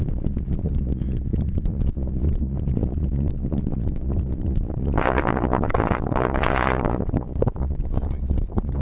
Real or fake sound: fake